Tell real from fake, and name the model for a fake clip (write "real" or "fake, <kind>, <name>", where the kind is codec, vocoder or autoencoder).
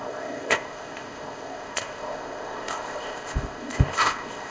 fake, codec, ZipCodec